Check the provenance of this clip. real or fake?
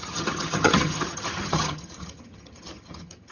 fake